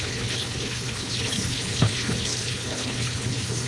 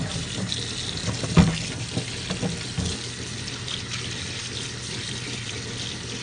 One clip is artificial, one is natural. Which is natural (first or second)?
second